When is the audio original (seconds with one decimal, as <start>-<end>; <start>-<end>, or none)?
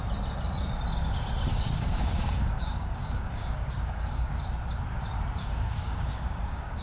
0.0-1.5; 4.3-5.4